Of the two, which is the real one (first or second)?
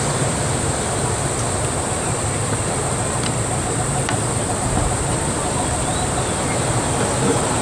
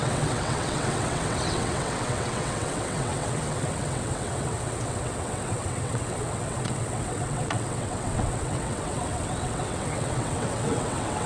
first